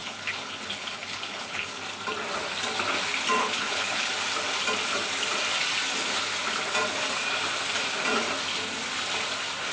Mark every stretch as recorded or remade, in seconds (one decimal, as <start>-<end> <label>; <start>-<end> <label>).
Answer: 0.0-1.8 remade; 1.8-3.4 recorded; 3.4-4.1 remade; 4.1-9.7 recorded

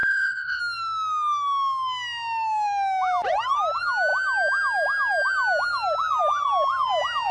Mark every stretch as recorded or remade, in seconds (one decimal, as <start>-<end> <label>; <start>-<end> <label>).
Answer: 0.0-0.6 remade; 0.6-7.3 recorded

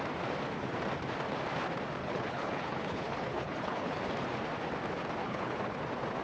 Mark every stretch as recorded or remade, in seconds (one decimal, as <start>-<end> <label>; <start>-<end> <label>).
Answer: 0.0-2.0 recorded; 2.0-4.0 remade; 4.0-5.2 recorded; 5.2-5.8 remade; 5.8-6.2 recorded

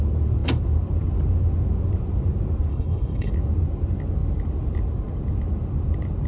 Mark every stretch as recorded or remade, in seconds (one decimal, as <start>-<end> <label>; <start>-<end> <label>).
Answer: 0.0-2.7 recorded; 2.7-3.3 remade; 3.3-6.3 recorded